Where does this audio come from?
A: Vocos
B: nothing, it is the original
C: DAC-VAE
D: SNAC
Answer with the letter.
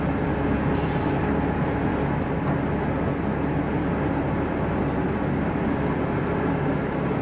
B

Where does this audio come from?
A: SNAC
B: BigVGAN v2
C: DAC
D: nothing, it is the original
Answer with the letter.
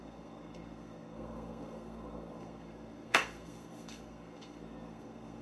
A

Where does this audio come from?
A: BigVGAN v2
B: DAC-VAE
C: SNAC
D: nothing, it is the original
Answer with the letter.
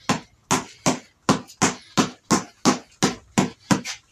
D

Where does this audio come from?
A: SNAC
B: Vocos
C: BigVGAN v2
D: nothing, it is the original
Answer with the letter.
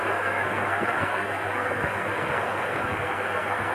A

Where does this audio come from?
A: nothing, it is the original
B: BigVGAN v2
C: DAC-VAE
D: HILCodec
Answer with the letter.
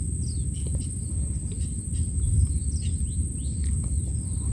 A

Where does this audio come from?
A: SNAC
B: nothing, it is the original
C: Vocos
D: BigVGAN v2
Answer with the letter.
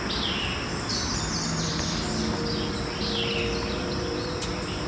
B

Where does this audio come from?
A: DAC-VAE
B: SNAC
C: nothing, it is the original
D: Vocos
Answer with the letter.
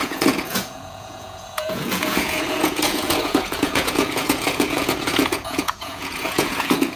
D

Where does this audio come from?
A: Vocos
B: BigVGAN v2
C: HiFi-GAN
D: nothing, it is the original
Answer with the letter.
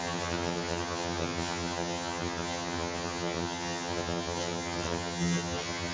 C